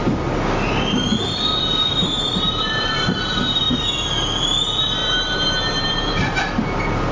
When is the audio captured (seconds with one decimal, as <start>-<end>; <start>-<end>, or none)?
0.0-2.0; 3.6-5.0; 6.4-7.1